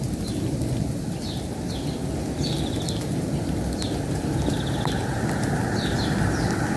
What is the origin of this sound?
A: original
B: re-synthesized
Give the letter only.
A